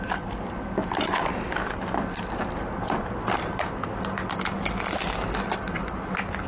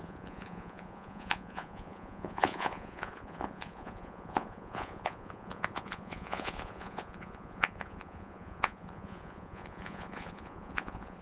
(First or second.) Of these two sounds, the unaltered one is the first